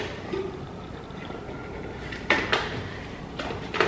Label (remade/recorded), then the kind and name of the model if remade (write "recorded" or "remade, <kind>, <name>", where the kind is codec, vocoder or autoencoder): remade, vocoder, BigVGAN v2